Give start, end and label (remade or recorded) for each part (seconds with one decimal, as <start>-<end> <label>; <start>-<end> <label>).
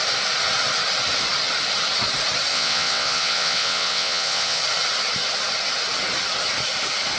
0.0-2.5 recorded; 2.5-4.6 remade; 4.6-7.2 recorded